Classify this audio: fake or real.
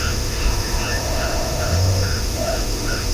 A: fake